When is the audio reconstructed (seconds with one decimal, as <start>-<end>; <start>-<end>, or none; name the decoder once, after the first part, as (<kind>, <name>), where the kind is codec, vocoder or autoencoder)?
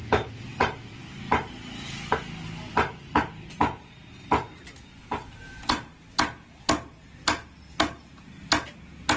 0.0-1.0 (vocoder, BigVGAN v2)